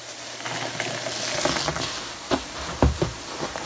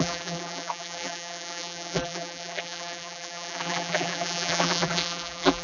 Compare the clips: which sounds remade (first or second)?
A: second